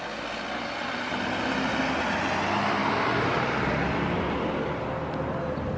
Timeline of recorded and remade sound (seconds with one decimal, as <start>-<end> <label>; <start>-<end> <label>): 0.0-5.8 recorded